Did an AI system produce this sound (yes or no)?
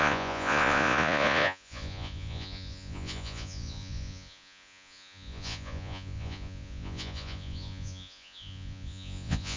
yes